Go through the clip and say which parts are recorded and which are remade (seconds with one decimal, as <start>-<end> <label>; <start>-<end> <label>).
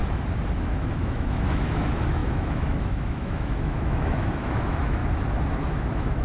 0.0-0.6 recorded; 0.6-5.0 remade; 5.0-5.5 recorded; 5.5-6.2 remade